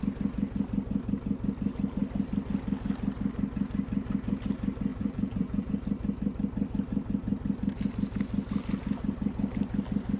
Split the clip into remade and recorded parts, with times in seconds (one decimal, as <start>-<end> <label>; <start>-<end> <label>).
0.0-4.9 recorded; 4.9-5.7 remade; 5.7-10.2 recorded